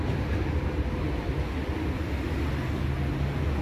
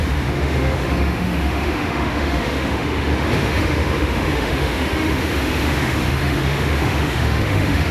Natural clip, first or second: first